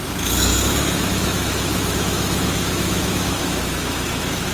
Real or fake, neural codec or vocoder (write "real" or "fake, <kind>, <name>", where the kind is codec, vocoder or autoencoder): fake, autoencoder, DAC-VAE